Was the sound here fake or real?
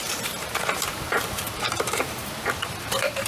fake